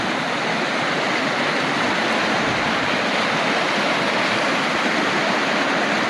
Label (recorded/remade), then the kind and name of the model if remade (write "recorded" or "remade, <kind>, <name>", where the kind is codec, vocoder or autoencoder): recorded